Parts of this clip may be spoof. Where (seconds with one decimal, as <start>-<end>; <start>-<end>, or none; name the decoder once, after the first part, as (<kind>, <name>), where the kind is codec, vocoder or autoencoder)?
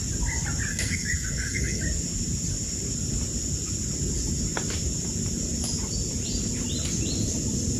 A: 0.7-1.8 (codec, SNAC)